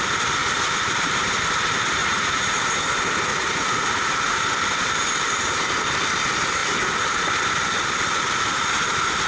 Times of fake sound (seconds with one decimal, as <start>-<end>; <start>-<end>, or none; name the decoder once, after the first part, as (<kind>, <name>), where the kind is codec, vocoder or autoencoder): 2.0-2.5 (vocoder, Vocos); 3.3-4.5